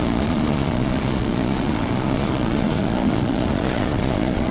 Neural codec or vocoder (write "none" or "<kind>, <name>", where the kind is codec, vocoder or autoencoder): vocoder, Vocos